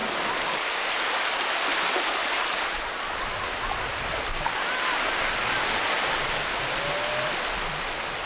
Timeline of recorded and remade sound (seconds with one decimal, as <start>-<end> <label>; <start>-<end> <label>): 0.0-8.3 recorded